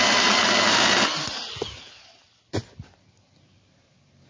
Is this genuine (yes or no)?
yes